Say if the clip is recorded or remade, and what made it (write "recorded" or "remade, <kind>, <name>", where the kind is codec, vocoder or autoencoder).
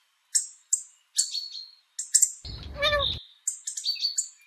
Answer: recorded